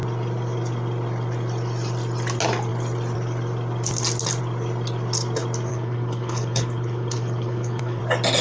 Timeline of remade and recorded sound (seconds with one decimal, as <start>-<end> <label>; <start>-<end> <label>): 0.0-5.7 recorded; 5.7-8.0 remade; 8.0-8.4 recorded